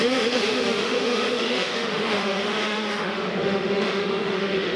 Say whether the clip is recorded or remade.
remade